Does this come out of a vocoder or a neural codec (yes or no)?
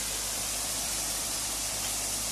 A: yes